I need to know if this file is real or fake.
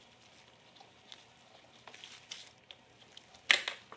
real